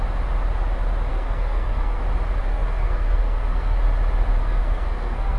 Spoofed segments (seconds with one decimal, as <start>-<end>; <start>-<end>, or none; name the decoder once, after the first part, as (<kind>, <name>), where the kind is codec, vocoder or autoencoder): 1.1-2.0 (codec, SNAC); 2.5-3.8; 4.4-5.4